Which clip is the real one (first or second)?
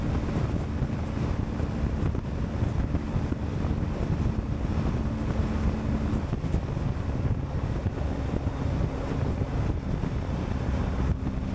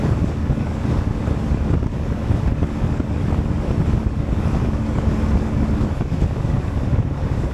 first